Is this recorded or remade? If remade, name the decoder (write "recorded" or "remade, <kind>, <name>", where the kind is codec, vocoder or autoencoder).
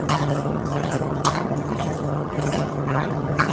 remade, vocoder, HiFi-GAN